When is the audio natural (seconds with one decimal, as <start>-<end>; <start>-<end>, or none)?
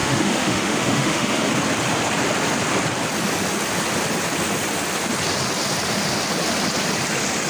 1.5-7.5